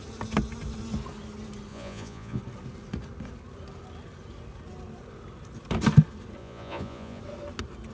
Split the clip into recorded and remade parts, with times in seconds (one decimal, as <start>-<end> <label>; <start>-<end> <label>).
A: 0.0-1.7 recorded; 1.7-2.4 remade; 2.4-6.4 recorded; 6.4-7.2 remade; 7.2-7.9 recorded